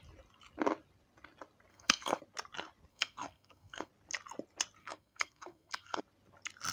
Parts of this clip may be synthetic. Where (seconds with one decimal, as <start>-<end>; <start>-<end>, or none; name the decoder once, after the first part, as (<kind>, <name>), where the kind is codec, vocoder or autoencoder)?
1.7-2.2 (codec, SNAC); 2.9-3.9; 4.8-6.0